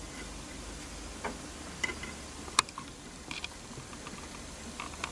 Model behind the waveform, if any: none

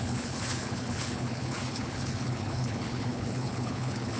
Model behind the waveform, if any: codec, HILCodec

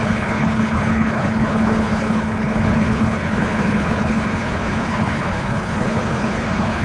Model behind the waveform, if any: codec, HILCodec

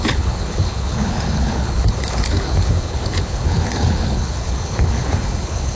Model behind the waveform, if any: codec, HILCodec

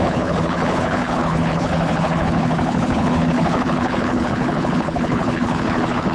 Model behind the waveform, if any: codec, HILCodec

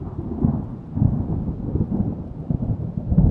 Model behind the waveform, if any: none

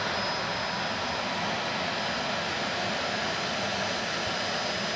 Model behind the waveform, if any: none